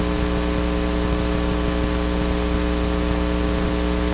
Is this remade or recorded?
recorded